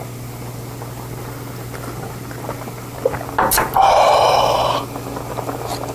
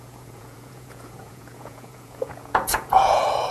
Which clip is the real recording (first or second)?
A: first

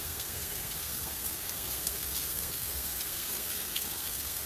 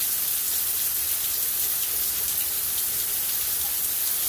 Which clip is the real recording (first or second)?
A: second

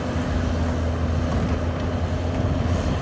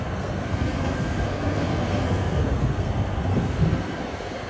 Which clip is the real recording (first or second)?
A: first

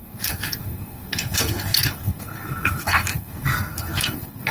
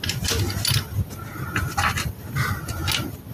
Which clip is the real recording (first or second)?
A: second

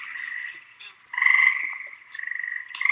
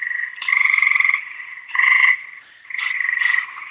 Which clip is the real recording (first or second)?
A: first